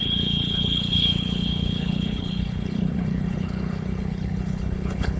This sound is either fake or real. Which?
fake